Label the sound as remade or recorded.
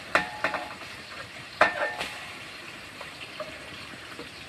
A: remade